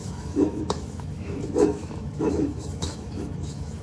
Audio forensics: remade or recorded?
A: remade